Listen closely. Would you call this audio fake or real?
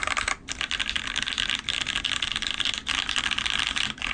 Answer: real